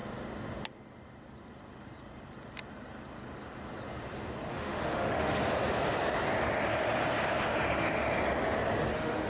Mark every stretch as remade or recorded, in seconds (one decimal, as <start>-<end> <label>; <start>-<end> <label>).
0.0-4.5 recorded; 4.5-5.4 remade; 5.4-8.9 recorded; 8.9-9.3 remade